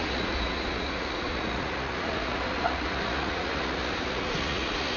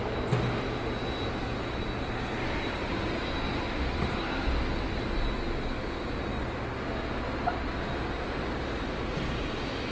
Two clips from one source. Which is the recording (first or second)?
second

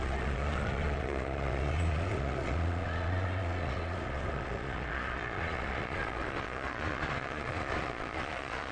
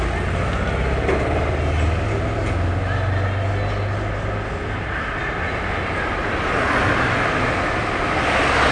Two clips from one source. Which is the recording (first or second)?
second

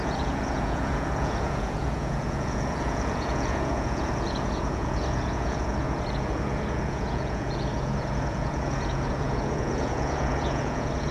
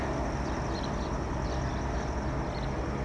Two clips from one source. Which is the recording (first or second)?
second